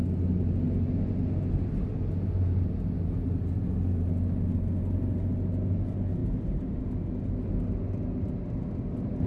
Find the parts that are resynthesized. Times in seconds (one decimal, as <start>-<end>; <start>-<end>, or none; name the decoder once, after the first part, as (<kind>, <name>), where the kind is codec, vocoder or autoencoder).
6.2-6.8 (vocoder, BigVGAN v2)